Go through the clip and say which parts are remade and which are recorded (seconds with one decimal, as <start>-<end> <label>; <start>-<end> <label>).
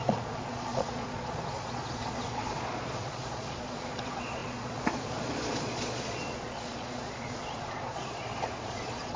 0.0-9.2 remade